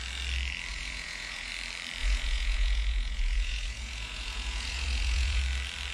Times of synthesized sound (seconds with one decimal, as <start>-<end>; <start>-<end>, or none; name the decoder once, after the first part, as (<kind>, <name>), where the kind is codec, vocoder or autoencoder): 0.7-1.5 (vocoder, Vocos); 2.0-5.4